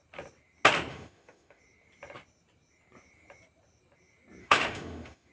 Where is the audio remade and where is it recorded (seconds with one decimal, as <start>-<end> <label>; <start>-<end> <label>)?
0.0-0.9 recorded; 0.9-1.6 remade; 1.6-4.4 recorded; 4.4-5.3 remade